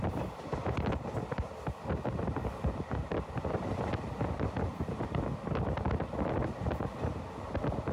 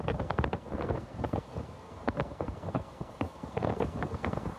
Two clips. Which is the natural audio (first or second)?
first